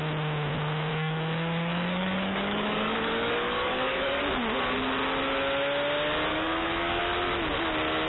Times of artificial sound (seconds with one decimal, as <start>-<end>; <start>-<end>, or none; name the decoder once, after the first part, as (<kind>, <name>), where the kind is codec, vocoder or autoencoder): 0.9-4.2 (codec, DAC); 6.3-7.0